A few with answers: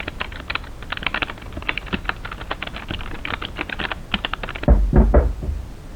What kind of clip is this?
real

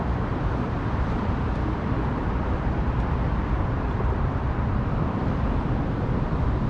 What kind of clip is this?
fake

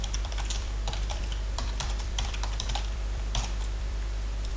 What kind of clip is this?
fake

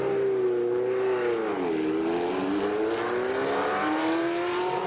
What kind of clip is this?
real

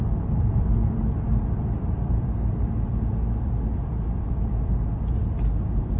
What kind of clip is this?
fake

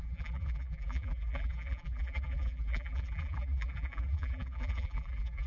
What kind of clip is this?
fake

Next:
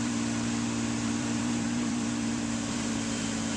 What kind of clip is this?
fake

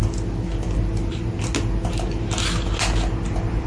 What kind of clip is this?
real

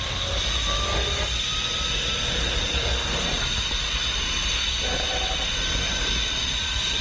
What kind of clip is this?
real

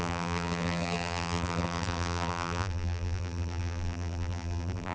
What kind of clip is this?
fake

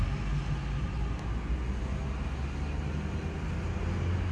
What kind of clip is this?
real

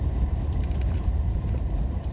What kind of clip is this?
fake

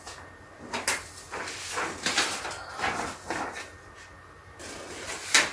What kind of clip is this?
real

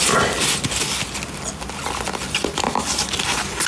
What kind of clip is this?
real